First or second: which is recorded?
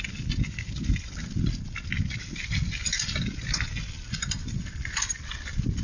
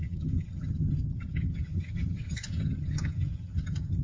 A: first